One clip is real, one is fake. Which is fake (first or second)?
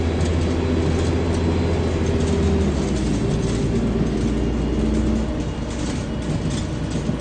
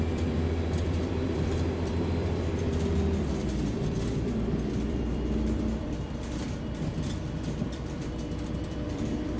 second